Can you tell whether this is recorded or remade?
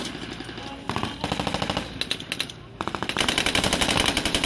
recorded